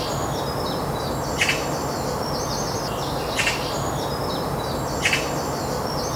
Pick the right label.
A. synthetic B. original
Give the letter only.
B